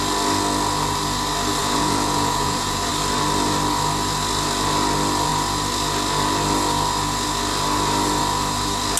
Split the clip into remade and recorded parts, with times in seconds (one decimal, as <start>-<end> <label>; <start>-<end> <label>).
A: 0.0-1.6 recorded; 1.6-2.9 remade; 2.9-9.0 recorded